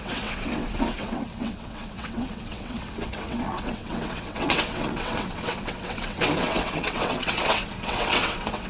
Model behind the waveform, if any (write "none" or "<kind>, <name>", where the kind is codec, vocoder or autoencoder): vocoder, WaveNeXt